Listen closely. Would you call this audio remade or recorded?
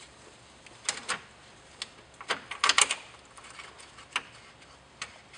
recorded